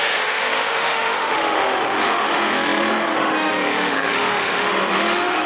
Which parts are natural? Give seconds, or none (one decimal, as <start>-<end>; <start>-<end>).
none